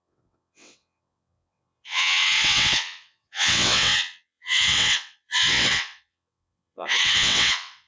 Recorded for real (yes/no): no